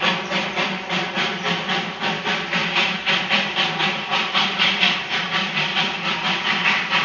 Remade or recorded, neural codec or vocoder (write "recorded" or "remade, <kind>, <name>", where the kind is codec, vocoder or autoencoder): remade, vocoder, BigVGAN v2